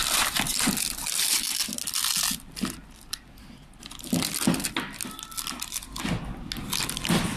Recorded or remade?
recorded